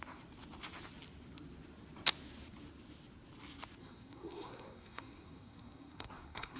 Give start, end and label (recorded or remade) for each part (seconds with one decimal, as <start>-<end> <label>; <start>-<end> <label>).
0.0-3.8 recorded; 3.8-6.6 remade